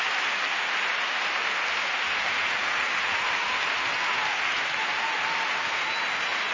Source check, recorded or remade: recorded